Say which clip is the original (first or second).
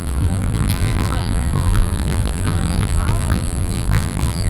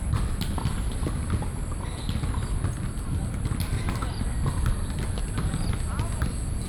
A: second